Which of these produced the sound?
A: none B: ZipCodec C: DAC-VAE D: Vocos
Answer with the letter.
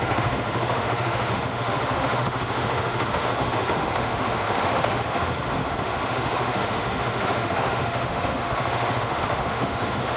C